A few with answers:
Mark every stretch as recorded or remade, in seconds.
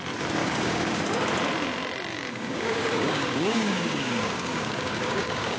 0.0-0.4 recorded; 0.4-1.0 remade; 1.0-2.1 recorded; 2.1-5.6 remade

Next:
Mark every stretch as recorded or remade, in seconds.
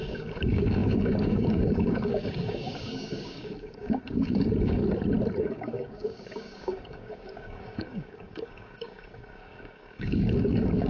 0.0-4.8 remade; 4.8-5.4 recorded; 5.4-10.9 remade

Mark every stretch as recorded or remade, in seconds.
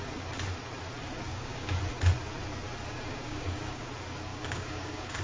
0.0-1.3 recorded; 1.3-1.8 remade; 1.8-3.1 recorded; 3.1-3.9 remade; 3.9-4.3 recorded; 4.3-5.2 remade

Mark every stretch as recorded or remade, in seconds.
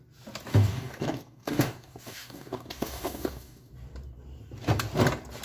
0.0-0.5 recorded; 0.5-3.7 remade; 3.7-5.4 recorded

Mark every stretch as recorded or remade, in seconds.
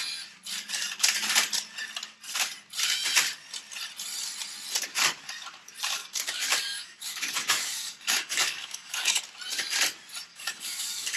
0.0-6.0 recorded; 6.0-9.2 remade; 9.2-10.3 recorded; 10.3-11.2 remade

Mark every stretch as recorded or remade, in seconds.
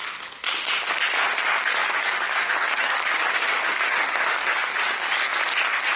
0.0-1.7 recorded; 1.7-5.3 remade; 5.3-6.0 recorded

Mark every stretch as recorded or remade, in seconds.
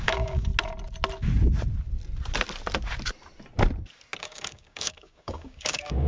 0.0-0.5 remade; 0.5-4.2 recorded; 4.2-6.1 remade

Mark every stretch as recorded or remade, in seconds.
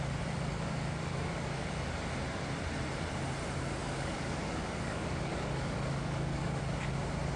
0.0-0.5 recorded; 0.5-1.7 remade; 1.7-3.8 recorded; 3.8-6.6 remade; 6.6-7.4 recorded